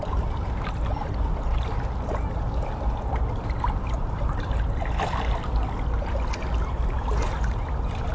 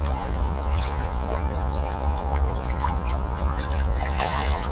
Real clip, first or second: first